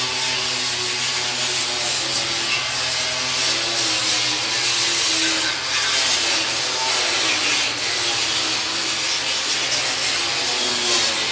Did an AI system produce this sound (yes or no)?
no